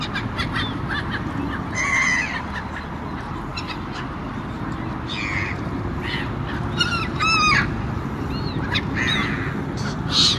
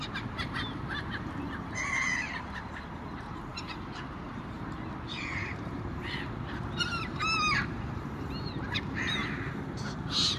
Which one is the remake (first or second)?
second